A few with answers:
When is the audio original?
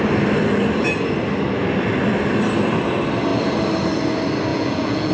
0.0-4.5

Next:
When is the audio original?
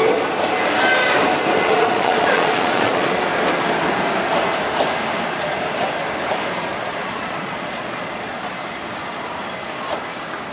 0.0-1.6; 3.2-6.8; 8.5-10.5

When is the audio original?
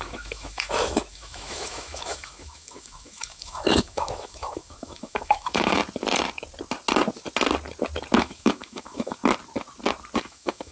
5.8-8.2; 9.2-10.2